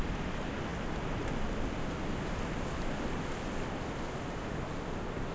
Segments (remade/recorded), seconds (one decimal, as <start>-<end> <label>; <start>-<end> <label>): 0.0-5.3 recorded